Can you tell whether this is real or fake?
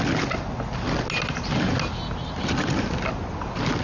real